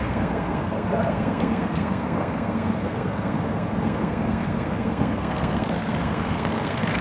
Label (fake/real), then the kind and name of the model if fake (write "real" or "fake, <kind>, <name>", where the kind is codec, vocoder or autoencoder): fake, codec, SNAC